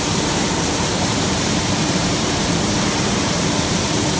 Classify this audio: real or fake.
fake